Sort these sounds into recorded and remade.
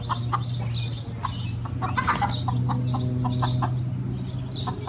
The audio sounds recorded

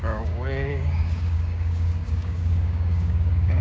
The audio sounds remade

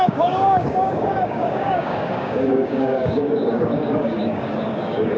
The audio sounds remade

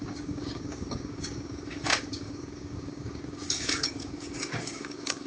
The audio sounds remade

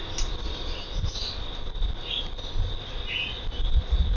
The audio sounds recorded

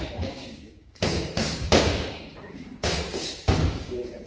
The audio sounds remade